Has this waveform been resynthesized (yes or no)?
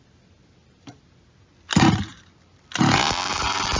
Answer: no